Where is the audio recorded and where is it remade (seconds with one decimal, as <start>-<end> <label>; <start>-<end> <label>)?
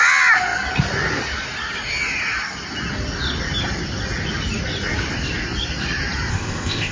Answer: 0.0-6.3 recorded; 6.3-6.9 remade